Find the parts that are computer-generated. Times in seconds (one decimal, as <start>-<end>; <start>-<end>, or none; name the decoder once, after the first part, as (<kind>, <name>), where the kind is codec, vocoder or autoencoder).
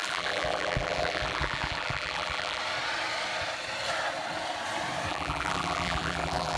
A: 0.0-2.6 (vocoder, BigVGAN v2); 5.1-6.6